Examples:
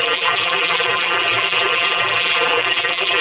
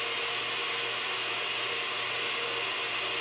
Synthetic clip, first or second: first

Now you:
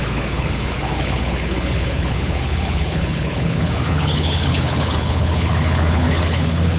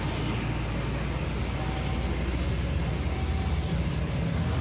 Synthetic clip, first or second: first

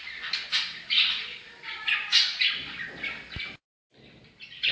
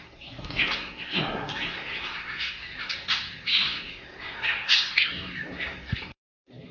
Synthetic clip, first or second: second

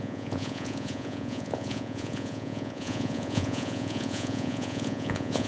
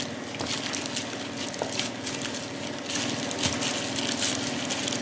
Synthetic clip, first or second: first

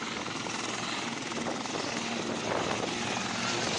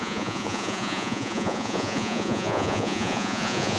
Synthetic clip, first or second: second